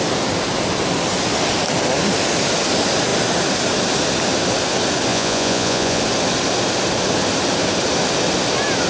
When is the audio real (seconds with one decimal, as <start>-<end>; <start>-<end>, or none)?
0.0-5.1; 6.0-8.9